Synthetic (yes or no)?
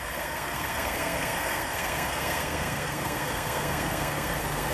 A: yes